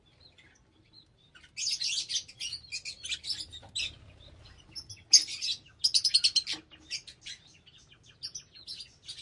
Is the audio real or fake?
real